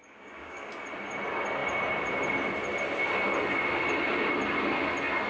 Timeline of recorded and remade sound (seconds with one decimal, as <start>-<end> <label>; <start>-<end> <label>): 0.0-0.7 remade; 0.7-5.3 recorded